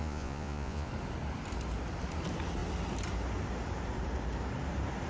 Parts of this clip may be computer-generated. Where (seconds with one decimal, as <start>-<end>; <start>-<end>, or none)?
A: 0.0-0.9